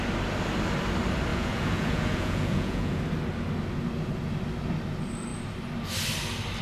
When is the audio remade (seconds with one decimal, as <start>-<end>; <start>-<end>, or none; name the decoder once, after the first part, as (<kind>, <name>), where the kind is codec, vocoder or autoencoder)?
1.3-3.0 (vocoder, Vocos)